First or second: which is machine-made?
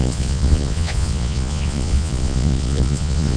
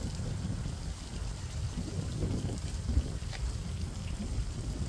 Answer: first